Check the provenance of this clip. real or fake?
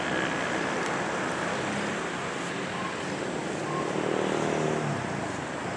real